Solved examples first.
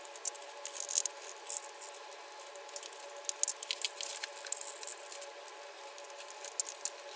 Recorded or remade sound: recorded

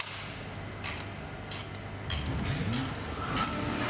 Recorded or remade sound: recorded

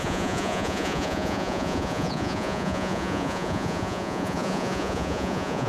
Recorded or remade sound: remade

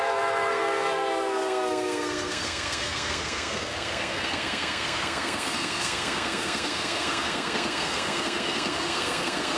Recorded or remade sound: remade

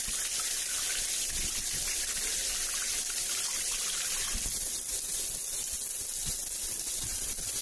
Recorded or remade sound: recorded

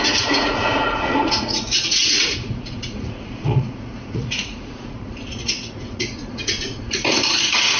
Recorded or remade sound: remade